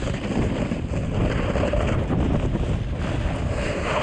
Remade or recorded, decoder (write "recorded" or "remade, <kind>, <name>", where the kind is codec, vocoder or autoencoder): recorded